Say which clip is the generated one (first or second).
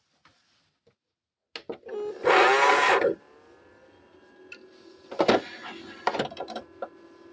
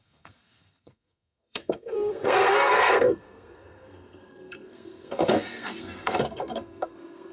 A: second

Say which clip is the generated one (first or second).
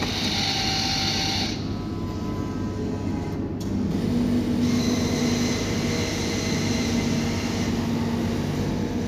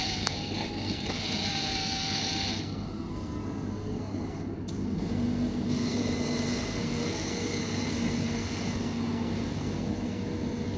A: second